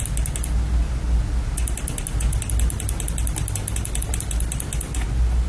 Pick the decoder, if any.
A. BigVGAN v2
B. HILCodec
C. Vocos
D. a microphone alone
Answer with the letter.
D